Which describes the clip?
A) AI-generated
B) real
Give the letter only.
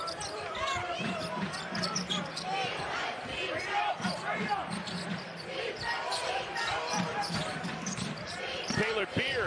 A